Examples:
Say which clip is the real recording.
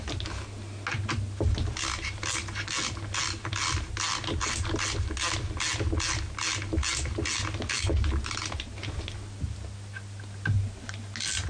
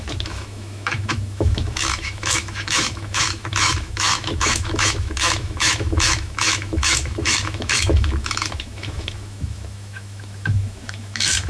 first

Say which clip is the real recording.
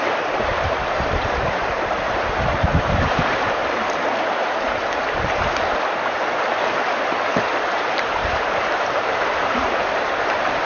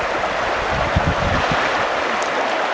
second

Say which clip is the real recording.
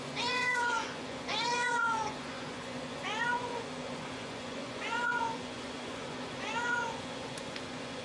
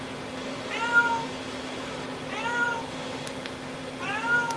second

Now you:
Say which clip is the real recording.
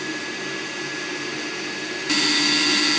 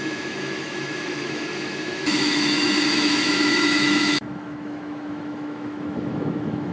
first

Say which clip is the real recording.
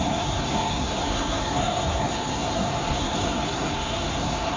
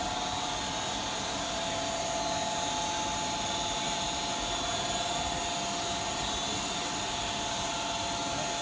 second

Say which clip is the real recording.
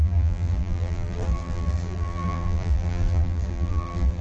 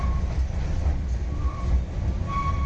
second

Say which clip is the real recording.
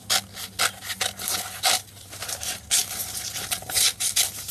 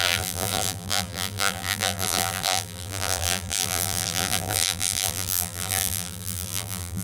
first